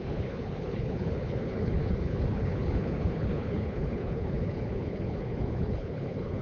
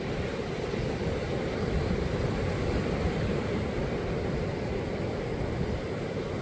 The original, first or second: second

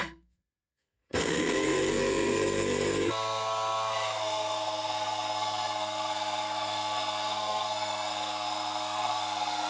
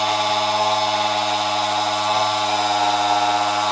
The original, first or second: second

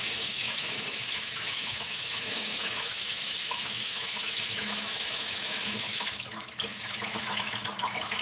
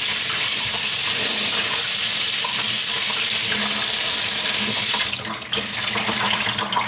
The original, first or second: second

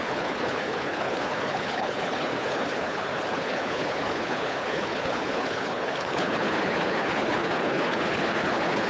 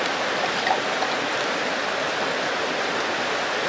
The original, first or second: second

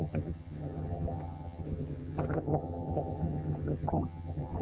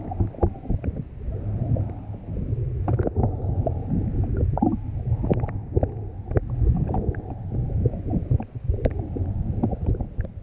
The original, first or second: second